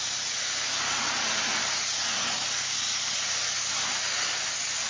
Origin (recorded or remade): recorded